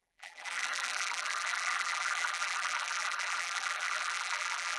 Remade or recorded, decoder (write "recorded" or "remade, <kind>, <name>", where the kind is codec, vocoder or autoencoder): remade, vocoder, BigVGAN v2